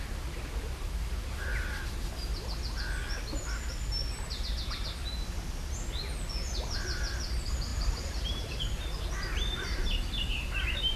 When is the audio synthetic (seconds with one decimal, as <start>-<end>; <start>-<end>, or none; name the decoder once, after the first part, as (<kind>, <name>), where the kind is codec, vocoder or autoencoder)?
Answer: 7.7-11.0 (vocoder, BigVGAN v2)